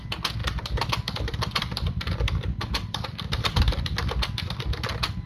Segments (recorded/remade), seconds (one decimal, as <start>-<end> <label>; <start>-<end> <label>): 0.0-0.4 recorded; 0.4-3.6 remade; 3.6-5.3 recorded